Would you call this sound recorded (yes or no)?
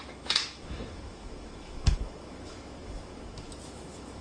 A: no